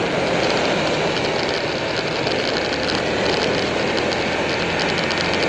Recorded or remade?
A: recorded